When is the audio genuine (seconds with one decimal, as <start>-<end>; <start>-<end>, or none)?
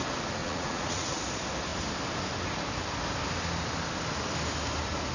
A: 0.0-0.4; 1.2-5.1